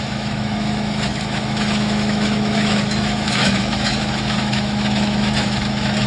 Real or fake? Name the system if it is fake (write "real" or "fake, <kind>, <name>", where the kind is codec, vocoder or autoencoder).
fake, autoencoder, DAC-VAE